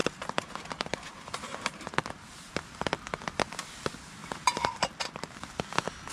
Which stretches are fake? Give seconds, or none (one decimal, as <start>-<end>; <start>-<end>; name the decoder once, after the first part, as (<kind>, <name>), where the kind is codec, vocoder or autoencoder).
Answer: 0.0-2.5 (vocoder, BigVGAN v2); 4.2-4.8